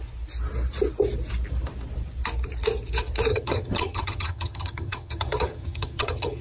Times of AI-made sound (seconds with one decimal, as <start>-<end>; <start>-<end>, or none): 3.3-6.4